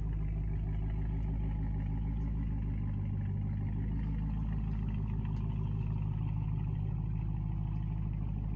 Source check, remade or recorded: recorded